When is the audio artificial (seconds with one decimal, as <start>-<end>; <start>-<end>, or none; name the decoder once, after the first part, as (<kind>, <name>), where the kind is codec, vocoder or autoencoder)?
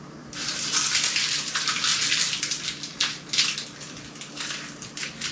0.0-1.9 (vocoder, BigVGAN v2)